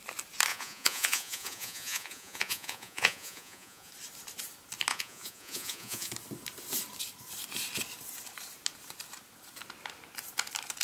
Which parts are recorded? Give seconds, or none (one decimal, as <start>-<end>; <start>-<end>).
0.0-0.5; 3.9-4.9; 6.1-10.8